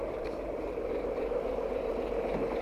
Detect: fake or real fake